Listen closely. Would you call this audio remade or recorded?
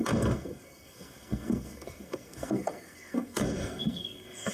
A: remade